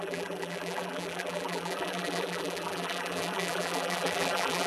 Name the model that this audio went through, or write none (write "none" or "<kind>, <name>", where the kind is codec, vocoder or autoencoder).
vocoder, BigVGAN v2